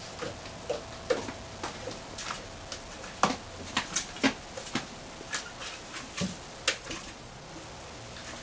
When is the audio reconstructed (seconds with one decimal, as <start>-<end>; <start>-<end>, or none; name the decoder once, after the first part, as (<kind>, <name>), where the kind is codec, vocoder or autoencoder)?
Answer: 6.7-7.5 (vocoder, Vocos)